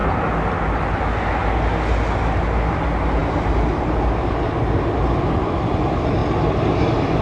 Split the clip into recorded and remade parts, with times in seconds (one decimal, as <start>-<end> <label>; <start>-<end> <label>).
0.0-7.2 recorded